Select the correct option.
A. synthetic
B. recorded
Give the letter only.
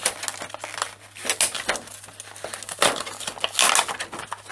B